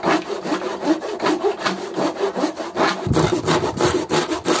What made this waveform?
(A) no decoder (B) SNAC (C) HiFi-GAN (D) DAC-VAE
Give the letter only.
A